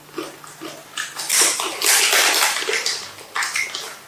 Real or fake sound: real